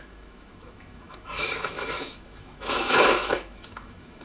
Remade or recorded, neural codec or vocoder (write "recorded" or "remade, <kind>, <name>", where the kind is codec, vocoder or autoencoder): remade, autoencoder, DAC-VAE